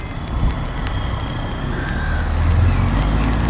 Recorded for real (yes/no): yes